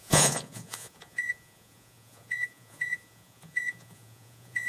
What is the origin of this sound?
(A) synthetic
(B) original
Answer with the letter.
A